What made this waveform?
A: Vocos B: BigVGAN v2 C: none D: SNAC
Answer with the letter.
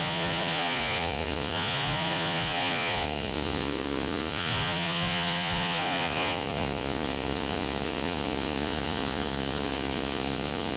A